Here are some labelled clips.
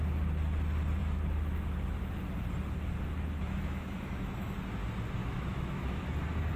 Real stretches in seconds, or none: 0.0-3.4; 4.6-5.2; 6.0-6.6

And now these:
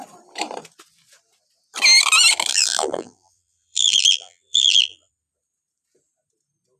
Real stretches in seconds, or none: 0.0-2.5; 5.1-6.8